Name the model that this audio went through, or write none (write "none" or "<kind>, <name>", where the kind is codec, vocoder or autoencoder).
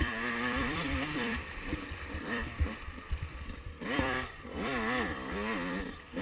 vocoder, BigVGAN v2